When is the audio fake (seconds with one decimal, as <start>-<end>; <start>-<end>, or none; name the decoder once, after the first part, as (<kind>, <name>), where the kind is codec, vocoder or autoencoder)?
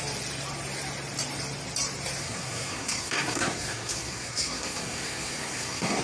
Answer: 2.2-6.0 (codec, SNAC)